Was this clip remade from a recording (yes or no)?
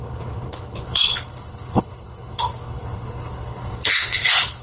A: yes